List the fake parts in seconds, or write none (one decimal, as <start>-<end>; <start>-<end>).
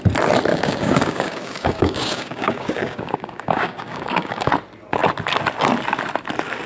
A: 0.5-4.5